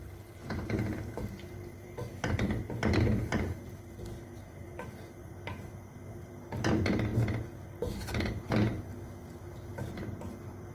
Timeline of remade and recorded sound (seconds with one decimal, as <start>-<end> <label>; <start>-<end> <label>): 0.0-7.1 remade; 7.1-9.8 recorded; 9.8-10.7 remade